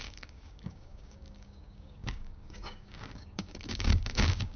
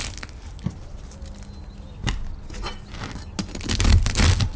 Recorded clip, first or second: second